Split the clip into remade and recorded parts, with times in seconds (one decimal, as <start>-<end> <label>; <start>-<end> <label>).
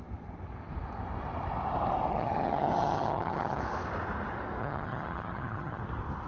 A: 0.0-2.1 recorded; 2.1-3.6 remade; 3.6-4.6 recorded; 4.6-5.8 remade; 5.8-6.3 recorded